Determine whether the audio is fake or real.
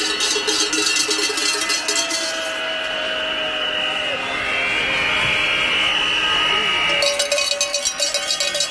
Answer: real